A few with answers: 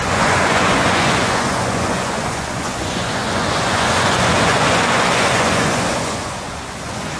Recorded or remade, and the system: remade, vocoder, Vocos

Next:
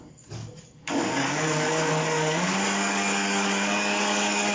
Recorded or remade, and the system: remade, codec, DAC